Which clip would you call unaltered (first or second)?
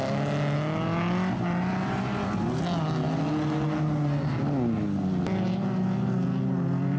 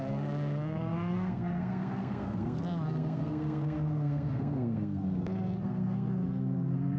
first